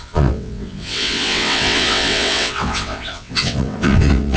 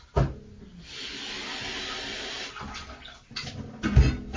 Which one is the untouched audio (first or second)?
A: second